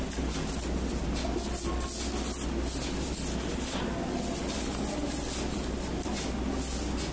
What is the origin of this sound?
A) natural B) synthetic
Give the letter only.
A